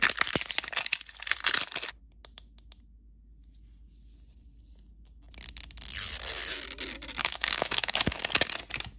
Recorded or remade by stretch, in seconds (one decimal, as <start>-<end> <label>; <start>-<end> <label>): 0.0-7.2 recorded; 7.2-8.3 remade; 8.3-9.0 recorded